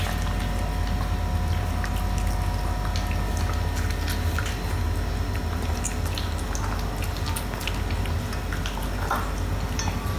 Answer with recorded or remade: recorded